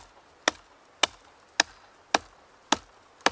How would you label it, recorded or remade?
recorded